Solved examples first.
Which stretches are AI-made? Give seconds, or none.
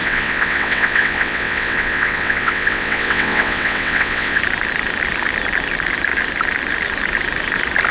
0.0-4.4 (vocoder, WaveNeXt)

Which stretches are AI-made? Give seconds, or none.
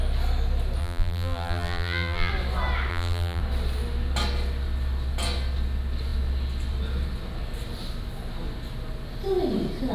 0.8-2.3 (vocoder, BigVGAN v2); 2.9-3.4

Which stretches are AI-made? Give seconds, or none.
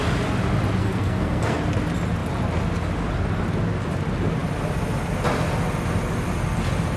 0.8-1.6 (codec, SNAC)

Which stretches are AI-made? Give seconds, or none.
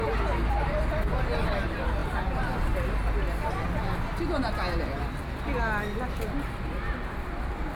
none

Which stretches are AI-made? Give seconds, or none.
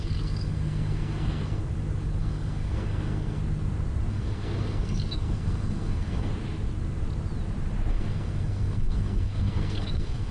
0.0-1.6 (codec, SNAC); 2.2-3.4; 4.1-6.3; 7.9-10.3